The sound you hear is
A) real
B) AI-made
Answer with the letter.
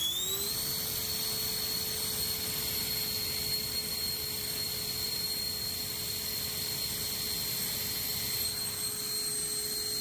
A